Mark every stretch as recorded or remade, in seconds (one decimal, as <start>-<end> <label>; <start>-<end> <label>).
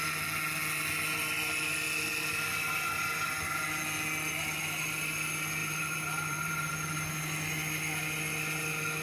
0.0-5.6 recorded; 5.6-6.7 remade; 6.7-9.0 recorded